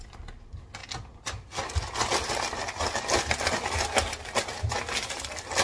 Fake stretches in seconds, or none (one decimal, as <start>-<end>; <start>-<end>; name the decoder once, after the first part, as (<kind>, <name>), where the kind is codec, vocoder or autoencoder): none